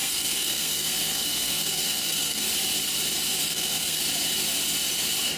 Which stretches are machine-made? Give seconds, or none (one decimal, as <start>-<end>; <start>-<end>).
0.0-2.5; 3.4-4.0